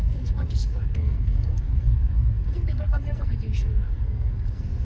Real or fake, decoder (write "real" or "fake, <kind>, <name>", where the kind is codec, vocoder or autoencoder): fake, codec, SNAC